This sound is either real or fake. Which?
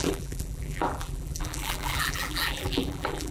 fake